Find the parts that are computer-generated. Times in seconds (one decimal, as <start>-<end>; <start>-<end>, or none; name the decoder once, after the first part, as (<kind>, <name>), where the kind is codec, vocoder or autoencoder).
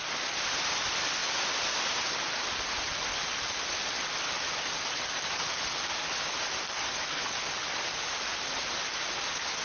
none